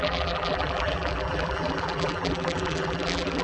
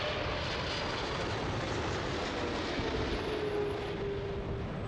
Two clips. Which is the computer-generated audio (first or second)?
first